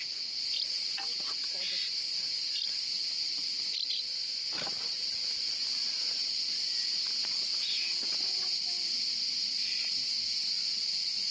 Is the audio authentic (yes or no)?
yes